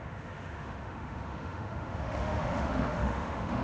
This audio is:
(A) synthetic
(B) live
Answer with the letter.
A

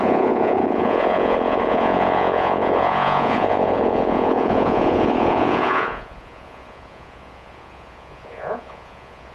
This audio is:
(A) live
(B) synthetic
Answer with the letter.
B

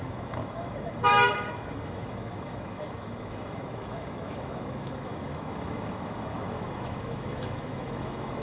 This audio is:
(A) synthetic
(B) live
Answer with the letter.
A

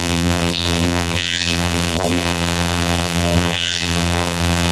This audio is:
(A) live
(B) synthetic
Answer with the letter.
B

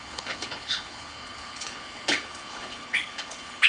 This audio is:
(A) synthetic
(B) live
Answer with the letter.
A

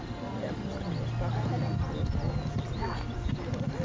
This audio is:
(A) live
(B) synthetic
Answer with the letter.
A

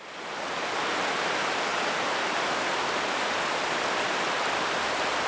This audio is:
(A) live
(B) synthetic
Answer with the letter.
A